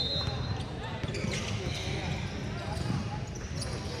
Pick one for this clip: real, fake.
real